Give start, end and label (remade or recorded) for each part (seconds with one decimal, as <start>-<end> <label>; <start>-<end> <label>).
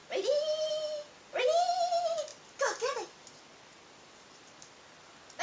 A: 0.0-0.7 remade; 0.7-5.4 recorded